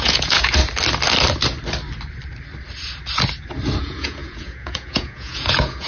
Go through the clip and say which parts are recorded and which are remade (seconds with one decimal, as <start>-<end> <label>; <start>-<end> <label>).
0.0-0.6 remade; 0.6-3.8 recorded; 3.8-5.9 remade